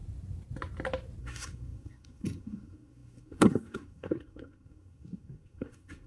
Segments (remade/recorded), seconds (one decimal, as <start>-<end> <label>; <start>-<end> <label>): 0.0-1.2 recorded; 1.2-6.1 remade